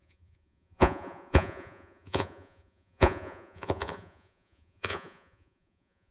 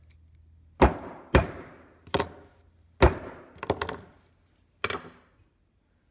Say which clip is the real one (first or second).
second